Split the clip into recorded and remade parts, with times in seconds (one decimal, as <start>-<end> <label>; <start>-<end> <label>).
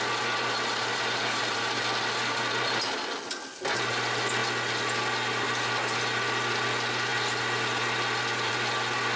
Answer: 0.0-0.9 recorded; 0.9-1.8 remade; 1.8-9.2 recorded